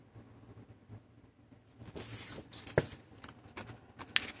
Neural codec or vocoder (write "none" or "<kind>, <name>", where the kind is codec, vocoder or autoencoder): none